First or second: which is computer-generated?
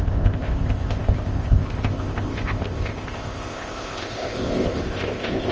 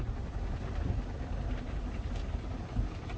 first